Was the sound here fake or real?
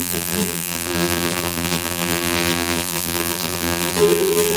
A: fake